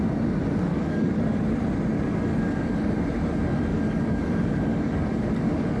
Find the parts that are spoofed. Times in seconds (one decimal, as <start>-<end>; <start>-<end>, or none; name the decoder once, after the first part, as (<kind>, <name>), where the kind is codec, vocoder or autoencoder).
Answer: 0.7-1.2 (codec, DAC); 2.3-2.9; 3.7-5.8